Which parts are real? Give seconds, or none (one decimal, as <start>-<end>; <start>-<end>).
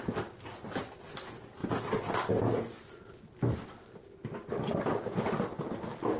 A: 0.0-6.2